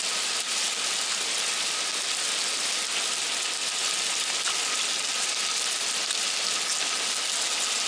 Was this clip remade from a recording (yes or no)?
no